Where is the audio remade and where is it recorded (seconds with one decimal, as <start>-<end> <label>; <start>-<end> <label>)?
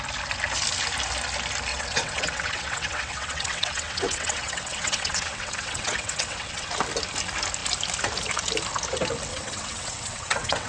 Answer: 0.0-1.7 recorded; 1.7-6.7 remade; 6.7-9.3 recorded; 9.3-10.7 remade